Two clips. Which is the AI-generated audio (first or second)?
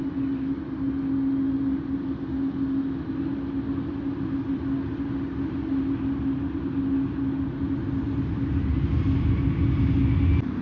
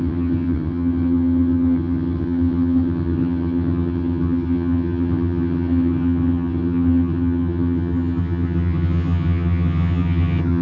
second